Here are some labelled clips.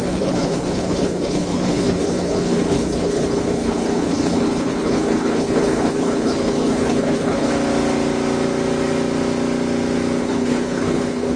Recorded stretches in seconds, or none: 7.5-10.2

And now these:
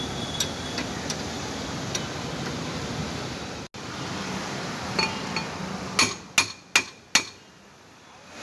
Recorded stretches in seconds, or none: 0.0-8.4

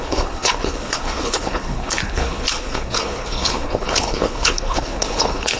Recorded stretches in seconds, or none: none

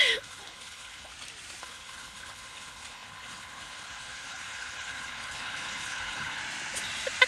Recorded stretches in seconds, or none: 1.1-1.6; 6.4-7.3

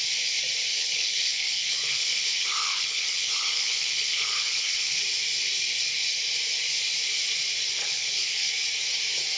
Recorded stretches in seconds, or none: 0.0-0.7; 5.0-7.8; 8.5-9.4

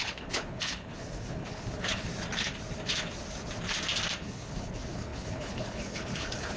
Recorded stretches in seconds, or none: 2.1-4.2

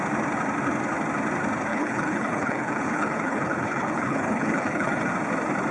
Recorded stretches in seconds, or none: 0.0-1.7; 5.1-5.7